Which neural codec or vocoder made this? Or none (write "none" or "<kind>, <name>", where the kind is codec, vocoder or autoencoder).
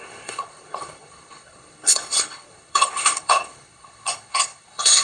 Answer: codec, HILCodec